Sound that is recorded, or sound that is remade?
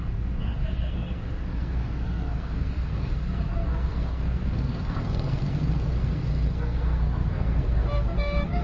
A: remade